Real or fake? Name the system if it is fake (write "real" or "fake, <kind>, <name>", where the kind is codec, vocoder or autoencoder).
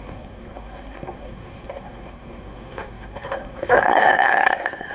fake, codec, SNAC